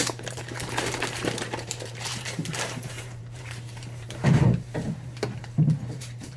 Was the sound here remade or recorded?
remade